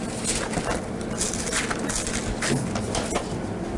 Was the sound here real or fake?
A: real